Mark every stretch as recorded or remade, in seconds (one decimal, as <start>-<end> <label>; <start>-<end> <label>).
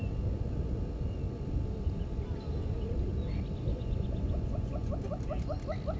0.0-3.7 recorded; 3.7-4.9 remade; 4.9-6.0 recorded